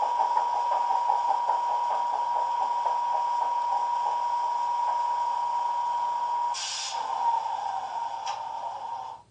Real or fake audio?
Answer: real